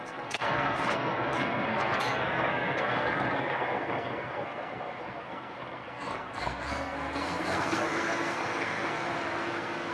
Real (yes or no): no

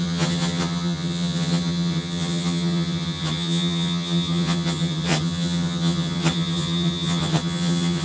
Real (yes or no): no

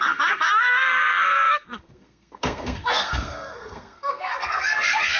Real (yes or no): no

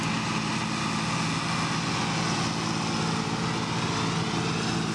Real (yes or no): yes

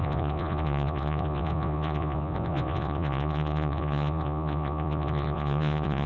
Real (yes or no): no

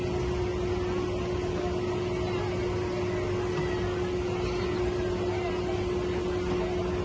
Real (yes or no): yes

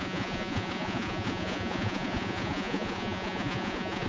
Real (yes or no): no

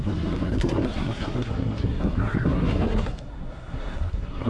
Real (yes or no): no